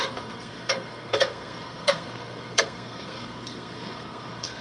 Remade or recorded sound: remade